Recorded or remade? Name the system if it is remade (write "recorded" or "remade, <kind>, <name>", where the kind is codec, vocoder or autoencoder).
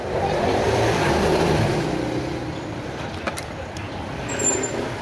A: remade, vocoder, BigVGAN v2